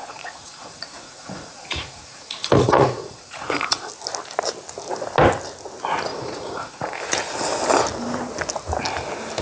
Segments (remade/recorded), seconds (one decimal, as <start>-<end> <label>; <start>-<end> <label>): 0.0-3.9 remade; 3.9-6.1 recorded; 6.1-7.0 remade; 7.0-9.4 recorded